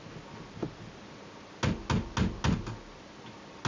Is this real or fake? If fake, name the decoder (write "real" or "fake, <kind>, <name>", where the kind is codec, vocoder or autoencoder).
real